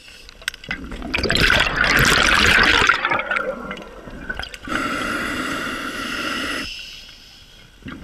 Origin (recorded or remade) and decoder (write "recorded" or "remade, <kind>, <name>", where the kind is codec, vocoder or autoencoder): recorded